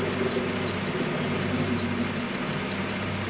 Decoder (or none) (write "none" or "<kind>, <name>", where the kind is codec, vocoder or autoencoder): none